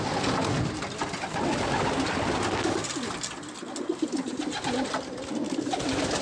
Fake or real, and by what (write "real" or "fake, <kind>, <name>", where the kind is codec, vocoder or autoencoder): real